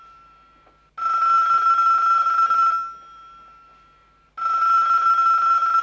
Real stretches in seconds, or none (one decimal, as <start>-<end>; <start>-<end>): 0.0-5.8